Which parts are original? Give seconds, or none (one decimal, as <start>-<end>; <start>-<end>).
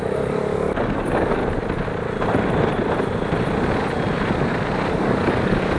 1.4-4.9